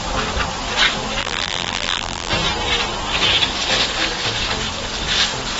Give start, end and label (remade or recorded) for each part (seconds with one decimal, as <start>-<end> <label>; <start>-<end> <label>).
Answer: 0.0-1.2 recorded; 1.2-2.3 remade; 2.3-5.6 recorded